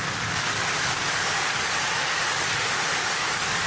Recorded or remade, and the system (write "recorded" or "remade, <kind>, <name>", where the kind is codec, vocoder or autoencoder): remade, codec, DAC